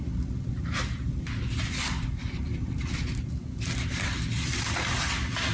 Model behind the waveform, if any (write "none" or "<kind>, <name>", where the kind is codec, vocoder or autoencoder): none